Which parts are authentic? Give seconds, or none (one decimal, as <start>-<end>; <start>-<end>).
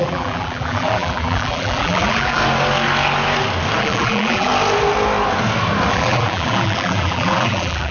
2.4-3.8; 4.5-5.9